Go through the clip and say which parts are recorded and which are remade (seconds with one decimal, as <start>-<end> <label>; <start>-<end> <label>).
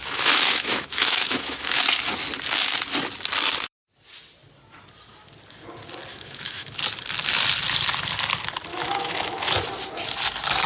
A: 0.0-1.8 remade; 1.8-6.1 recorded; 6.1-6.8 remade; 6.8-8.7 recorded; 8.7-9.4 remade; 9.4-10.7 recorded